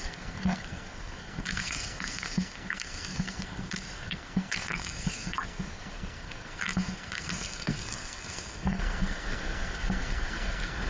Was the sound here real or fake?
fake